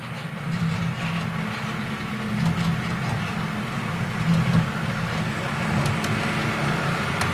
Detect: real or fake real